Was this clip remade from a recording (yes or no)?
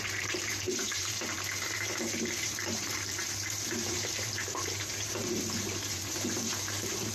yes